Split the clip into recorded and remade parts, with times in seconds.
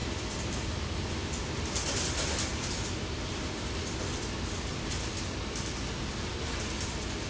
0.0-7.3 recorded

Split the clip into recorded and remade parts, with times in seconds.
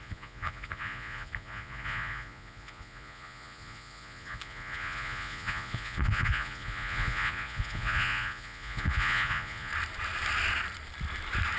0.0-9.7 remade; 9.7-11.6 recorded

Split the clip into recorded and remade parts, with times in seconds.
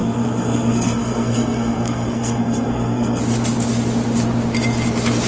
0.0-3.2 remade; 3.2-5.3 recorded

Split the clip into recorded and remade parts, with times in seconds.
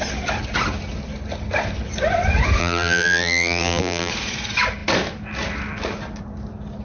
0.0-2.6 recorded; 2.6-4.1 remade; 4.1-6.8 recorded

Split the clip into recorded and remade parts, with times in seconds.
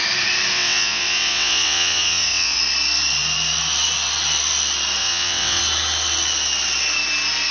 0.0-0.5 recorded; 0.5-2.6 remade; 2.6-5.0 recorded; 5.0-5.6 remade; 5.6-7.5 recorded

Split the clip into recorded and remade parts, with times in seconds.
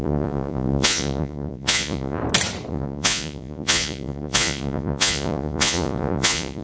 0.0-2.2 remade; 2.2-2.7 recorded; 2.7-6.6 remade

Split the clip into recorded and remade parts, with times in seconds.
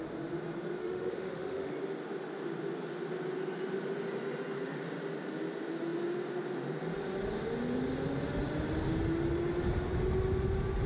0.0-0.8 recorded; 0.8-1.7 remade; 1.7-10.9 recorded